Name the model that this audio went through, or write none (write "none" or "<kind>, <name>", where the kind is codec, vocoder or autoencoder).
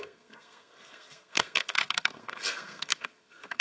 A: codec, SNAC